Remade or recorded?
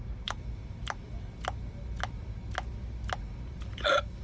recorded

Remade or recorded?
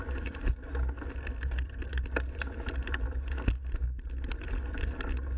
recorded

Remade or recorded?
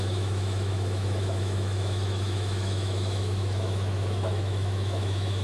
remade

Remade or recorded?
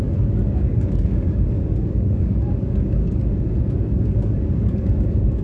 remade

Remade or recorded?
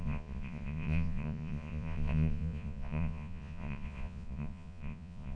remade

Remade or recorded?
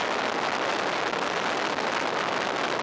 recorded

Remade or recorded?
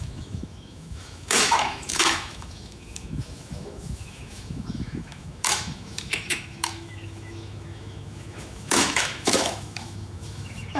remade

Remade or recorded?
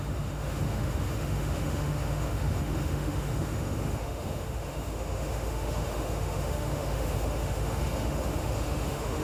remade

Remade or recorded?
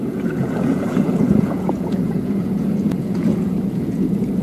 remade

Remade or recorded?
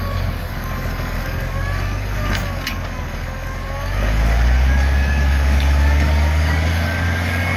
remade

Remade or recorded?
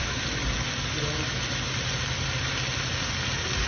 recorded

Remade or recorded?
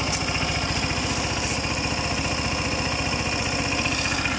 recorded